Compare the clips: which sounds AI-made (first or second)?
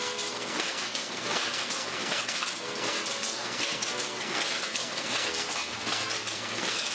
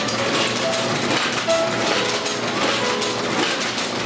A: first